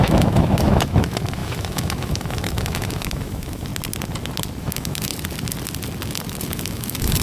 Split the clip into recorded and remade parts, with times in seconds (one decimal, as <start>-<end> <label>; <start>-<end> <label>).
0.0-3.7 remade; 3.7-4.6 recorded; 4.6-5.1 remade; 5.1-6.5 recorded; 6.5-7.2 remade

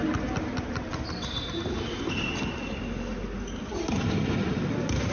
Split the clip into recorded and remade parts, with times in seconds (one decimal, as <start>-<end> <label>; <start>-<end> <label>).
0.0-5.1 recorded